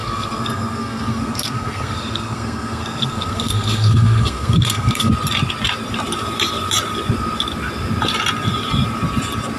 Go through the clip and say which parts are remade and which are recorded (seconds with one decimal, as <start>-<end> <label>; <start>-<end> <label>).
0.0-5.1 remade; 5.1-9.6 recorded